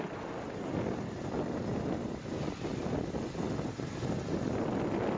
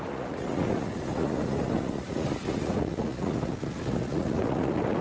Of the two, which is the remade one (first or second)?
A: second